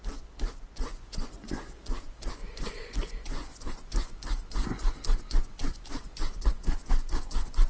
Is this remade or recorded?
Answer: remade